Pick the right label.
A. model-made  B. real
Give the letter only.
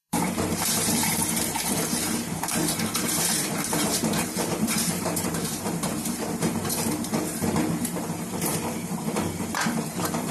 A